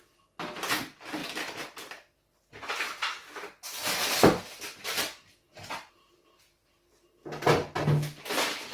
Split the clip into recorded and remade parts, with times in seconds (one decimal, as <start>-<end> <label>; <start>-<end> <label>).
0.0-8.7 recorded